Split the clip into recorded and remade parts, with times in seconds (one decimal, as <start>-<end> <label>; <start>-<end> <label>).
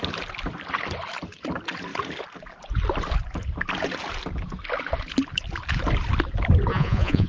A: 0.0-6.7 recorded; 6.7-7.3 remade